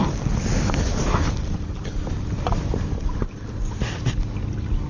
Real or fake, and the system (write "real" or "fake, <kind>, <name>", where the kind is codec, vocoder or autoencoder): real